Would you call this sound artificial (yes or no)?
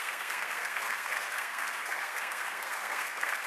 yes